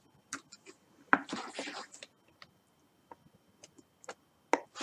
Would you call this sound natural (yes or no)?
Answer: yes